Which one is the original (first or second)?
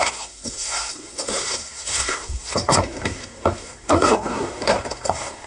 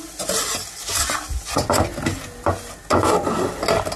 second